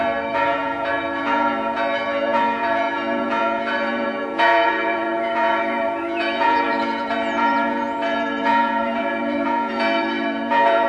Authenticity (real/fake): fake